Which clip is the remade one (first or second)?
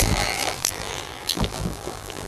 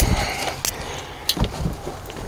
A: first